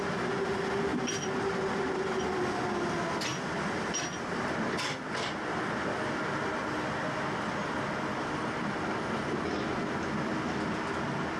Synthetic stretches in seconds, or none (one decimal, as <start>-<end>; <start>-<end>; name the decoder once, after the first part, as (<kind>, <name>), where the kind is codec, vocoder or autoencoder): none